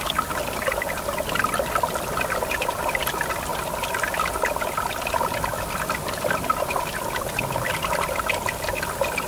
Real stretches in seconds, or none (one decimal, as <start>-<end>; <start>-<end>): 0.0-9.3